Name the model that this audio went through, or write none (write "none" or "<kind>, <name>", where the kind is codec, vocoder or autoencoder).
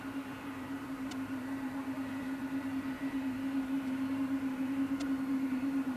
vocoder, BigVGAN v2